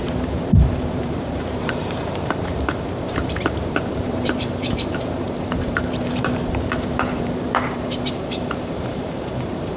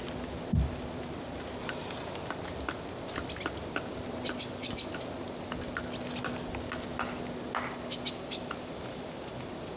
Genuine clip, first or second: second